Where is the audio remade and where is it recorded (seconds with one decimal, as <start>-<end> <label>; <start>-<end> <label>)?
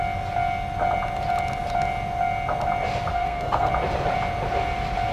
0.0-3.1 recorded; 3.1-3.7 remade; 3.7-5.1 recorded